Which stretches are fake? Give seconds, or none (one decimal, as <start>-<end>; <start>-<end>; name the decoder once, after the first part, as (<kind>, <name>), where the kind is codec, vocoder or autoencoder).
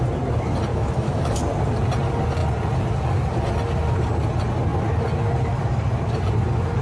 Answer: 0.7-1.4 (autoencoder, DAC-VAE)